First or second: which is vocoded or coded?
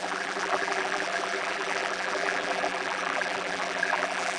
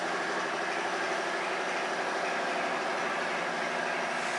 first